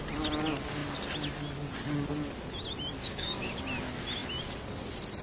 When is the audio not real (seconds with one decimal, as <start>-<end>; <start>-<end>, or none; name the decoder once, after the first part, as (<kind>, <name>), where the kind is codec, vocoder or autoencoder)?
3.0-3.6 (codec, DAC)